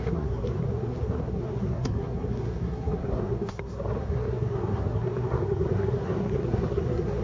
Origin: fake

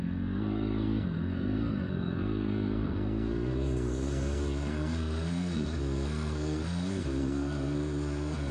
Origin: fake